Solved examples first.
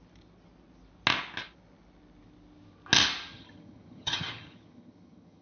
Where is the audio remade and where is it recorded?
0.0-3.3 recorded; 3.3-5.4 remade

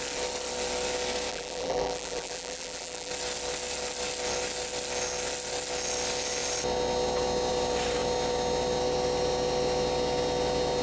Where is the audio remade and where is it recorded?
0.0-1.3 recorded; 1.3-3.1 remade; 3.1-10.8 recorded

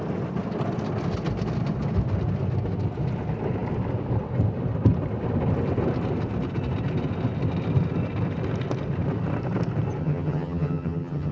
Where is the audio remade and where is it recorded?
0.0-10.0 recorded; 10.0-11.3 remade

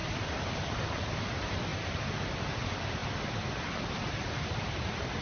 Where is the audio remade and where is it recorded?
0.0-1.7 recorded; 1.7-2.4 remade; 2.4-5.2 recorded

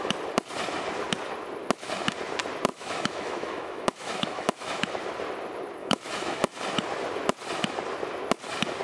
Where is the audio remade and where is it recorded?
0.0-2.7 recorded; 2.7-4.9 remade; 4.9-5.8 recorded; 5.8-6.6 remade; 6.6-8.8 recorded

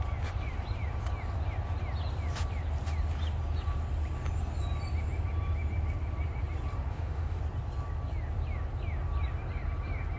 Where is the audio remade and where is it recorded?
0.0-6.9 recorded; 6.9-7.4 remade; 7.4-10.2 recorded